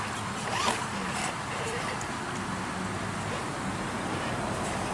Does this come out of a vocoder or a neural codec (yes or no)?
no